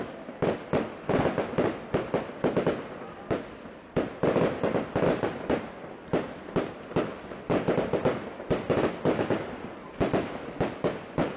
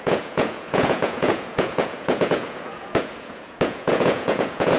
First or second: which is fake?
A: second